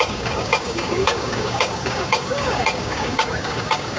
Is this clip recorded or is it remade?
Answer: remade